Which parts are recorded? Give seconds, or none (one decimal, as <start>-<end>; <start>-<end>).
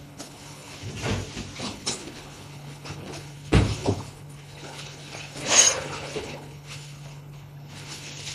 0.9-1.6